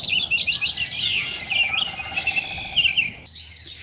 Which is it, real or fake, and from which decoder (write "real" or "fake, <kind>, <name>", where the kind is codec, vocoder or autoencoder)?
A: real